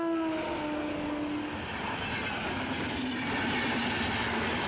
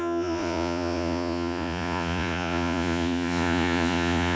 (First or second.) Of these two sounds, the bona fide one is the first